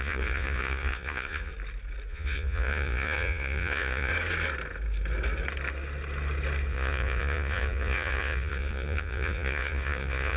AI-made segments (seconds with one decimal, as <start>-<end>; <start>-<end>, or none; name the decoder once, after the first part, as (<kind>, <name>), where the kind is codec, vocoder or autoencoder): 0.0-1.5 (vocoder, Vocos); 2.1-4.1; 6.7-10.4